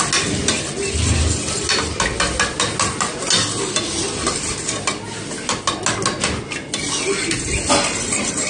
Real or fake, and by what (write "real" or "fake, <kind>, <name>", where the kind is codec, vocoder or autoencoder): real